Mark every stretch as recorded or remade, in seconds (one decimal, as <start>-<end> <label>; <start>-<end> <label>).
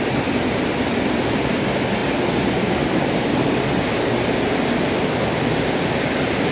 0.0-6.5 recorded